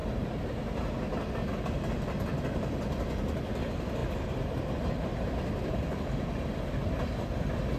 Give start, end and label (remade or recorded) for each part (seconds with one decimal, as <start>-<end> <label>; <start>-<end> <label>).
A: 0.0-7.8 recorded